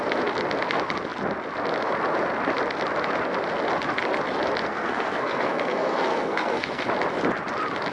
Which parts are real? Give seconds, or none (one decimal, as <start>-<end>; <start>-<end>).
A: 0.0-4.6; 6.8-7.9